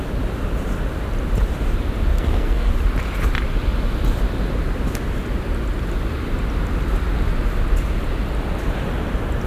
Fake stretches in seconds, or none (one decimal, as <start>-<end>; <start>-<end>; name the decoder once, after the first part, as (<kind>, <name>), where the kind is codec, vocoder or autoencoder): 2.1-2.7 (codec, SNAC)